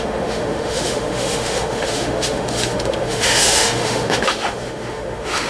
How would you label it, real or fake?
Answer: fake